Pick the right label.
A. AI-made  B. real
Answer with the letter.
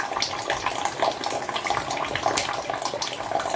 B